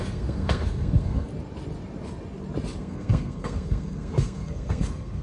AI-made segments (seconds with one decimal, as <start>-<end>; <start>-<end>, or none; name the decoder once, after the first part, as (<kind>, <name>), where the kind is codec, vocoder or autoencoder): 0.0-1.3 (codec, SNAC); 2.8-5.2